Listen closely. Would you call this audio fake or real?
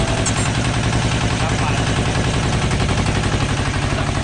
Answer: real